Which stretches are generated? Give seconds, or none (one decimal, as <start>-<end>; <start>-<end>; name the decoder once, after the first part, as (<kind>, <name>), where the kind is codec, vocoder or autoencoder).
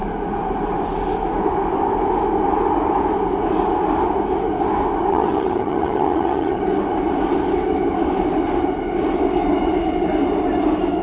5.1-6.6 (vocoder, HiFi-GAN)